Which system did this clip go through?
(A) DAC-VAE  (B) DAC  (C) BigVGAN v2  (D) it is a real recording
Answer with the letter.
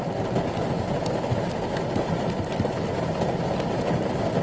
D